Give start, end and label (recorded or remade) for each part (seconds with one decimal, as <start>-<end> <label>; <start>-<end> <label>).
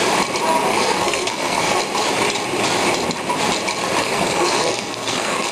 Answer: 0.0-0.7 recorded; 0.7-1.8 remade; 1.8-4.0 recorded; 4.0-5.5 remade